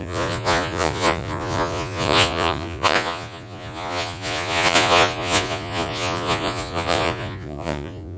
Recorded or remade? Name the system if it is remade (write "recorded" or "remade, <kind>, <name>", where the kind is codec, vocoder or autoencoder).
remade, vocoder, Vocos